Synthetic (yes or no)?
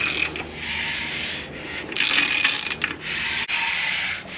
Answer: no